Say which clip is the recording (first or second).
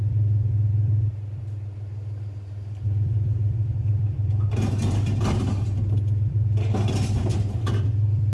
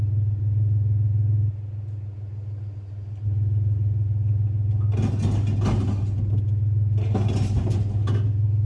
second